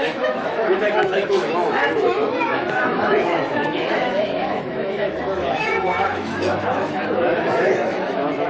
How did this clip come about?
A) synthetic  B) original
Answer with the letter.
A